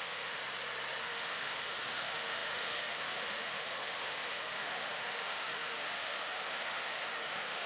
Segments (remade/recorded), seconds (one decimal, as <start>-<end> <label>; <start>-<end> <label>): 0.0-0.4 remade; 0.4-1.0 recorded; 1.0-7.7 remade